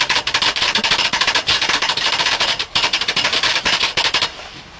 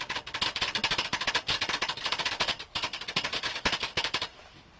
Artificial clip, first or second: first